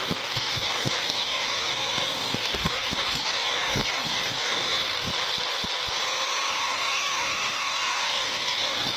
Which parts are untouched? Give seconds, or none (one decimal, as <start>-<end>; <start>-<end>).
5.1-6.5